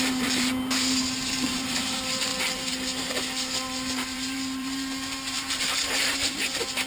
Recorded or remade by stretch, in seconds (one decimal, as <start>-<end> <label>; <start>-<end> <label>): 0.0-6.9 remade